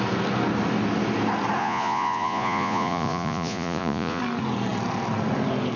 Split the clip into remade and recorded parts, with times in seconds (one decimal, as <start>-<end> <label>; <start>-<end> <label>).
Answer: 0.0-1.6 recorded; 1.6-4.2 remade; 4.2-5.8 recorded